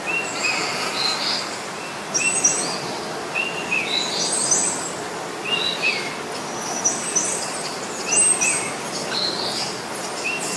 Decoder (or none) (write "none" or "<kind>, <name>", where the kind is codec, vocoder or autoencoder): none